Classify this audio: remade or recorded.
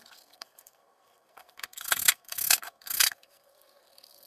remade